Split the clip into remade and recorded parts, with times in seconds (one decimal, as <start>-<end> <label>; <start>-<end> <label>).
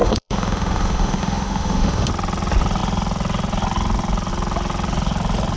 0.0-2.1 remade; 2.1-5.6 recorded